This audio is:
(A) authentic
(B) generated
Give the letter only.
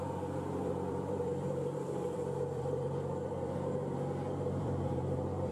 B